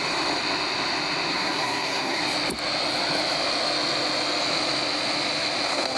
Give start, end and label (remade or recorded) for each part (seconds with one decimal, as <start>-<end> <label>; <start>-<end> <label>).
0.0-1.3 recorded; 1.3-2.2 remade; 2.2-6.0 recorded